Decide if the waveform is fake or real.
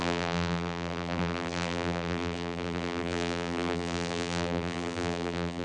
fake